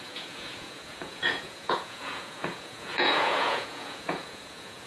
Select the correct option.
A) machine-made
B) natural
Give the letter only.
A